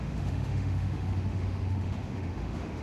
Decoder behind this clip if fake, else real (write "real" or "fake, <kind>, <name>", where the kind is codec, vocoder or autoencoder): fake, autoencoder, DAC-VAE